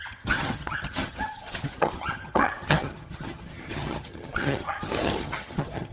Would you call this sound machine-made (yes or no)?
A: yes